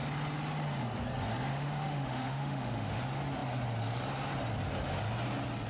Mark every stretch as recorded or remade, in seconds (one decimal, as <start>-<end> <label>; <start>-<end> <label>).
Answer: 0.0-1.5 recorded; 1.5-3.0 remade; 3.0-5.7 recorded